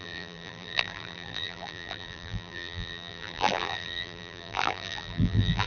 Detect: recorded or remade remade